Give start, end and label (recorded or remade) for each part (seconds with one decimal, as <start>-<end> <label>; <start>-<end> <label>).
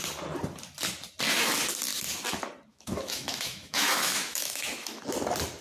0.0-2.7 recorded; 2.7-5.0 remade; 5.0-5.6 recorded